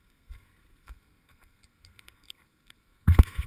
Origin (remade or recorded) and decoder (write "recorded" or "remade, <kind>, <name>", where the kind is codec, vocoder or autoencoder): remade, codec, SNAC